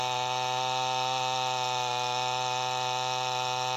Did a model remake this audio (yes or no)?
no